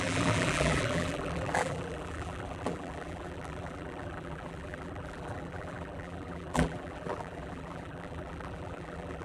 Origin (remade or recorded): remade